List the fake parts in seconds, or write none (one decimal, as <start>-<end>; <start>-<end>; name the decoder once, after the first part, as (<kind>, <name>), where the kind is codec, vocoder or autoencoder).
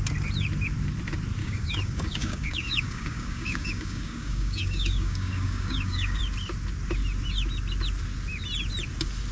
1.4-6.2 (codec, DAC)